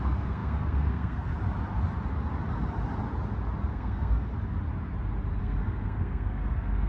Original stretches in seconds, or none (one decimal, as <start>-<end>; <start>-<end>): 1.3-3.7; 4.3-5.4